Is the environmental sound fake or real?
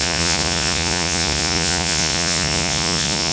fake